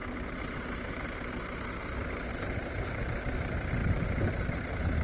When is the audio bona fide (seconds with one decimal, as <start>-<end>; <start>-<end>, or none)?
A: 0.0-2.3; 3.0-3.8; 4.3-5.0